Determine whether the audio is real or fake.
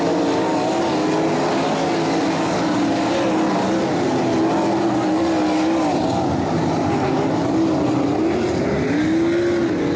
real